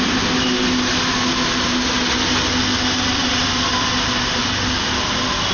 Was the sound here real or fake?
real